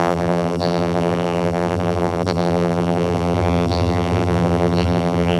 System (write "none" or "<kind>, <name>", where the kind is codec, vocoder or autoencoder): vocoder, BigVGAN v2